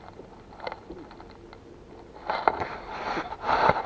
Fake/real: real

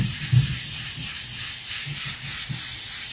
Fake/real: real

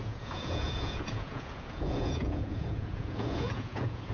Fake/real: fake